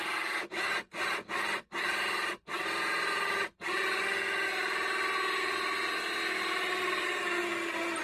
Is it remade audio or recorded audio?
recorded